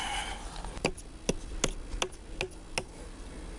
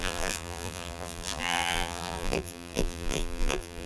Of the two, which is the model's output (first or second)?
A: second